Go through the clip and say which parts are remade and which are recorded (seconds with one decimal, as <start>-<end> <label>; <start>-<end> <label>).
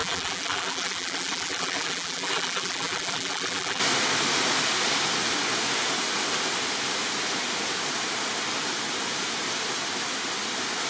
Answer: 0.0-3.8 remade; 3.8-10.9 recorded